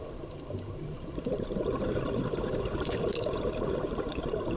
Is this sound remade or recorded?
remade